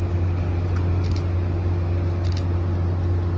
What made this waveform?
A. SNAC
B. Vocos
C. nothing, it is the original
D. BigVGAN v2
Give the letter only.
C